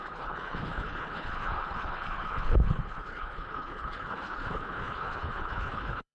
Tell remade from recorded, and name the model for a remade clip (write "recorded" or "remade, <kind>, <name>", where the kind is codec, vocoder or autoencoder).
remade, codec, HILCodec